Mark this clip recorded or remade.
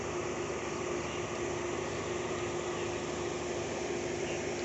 recorded